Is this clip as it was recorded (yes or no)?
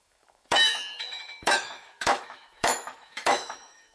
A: no